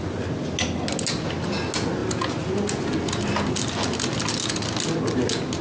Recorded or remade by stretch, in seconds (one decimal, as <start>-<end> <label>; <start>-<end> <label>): 0.0-5.6 recorded